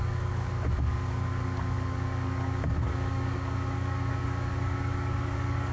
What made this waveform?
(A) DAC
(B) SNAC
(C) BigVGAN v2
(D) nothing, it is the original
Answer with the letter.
A